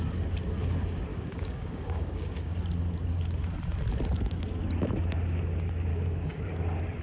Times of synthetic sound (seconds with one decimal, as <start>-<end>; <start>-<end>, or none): 1.1-2.5; 5.9-6.5